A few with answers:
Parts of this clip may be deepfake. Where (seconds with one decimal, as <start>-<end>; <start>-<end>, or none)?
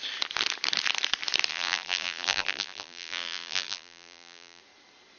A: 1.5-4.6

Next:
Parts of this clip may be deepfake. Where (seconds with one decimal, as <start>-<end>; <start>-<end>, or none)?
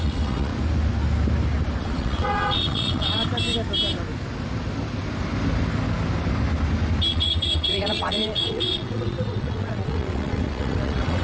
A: 0.0-0.5; 1.8-3.2; 7.1-11.2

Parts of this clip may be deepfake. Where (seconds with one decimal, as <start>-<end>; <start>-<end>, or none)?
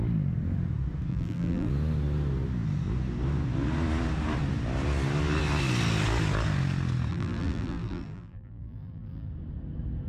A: 1.1-1.7; 7.1-9.3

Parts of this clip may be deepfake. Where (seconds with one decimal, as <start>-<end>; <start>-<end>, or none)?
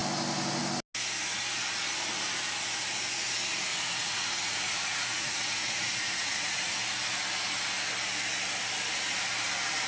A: 3.7-6.7